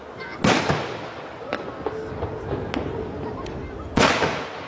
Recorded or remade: recorded